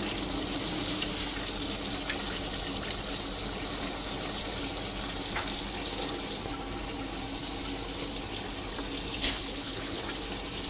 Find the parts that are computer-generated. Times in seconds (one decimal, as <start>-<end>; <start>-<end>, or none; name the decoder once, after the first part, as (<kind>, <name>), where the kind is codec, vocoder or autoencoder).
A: 9.2-10.0 (codec, HILCodec)